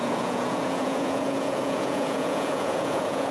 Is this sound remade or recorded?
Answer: remade